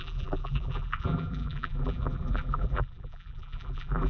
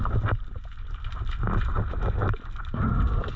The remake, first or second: first